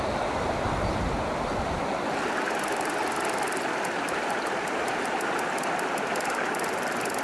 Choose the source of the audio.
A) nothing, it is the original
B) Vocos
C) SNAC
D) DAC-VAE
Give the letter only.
A